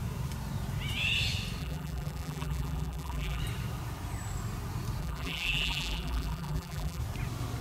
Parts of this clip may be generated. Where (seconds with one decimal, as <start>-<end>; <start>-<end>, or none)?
1.6-3.4; 5.0-7.0